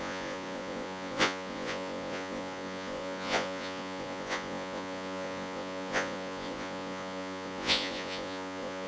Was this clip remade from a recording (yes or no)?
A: yes